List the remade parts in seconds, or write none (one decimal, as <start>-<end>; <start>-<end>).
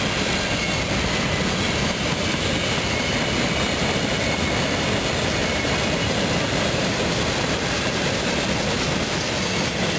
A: 5.4-8.1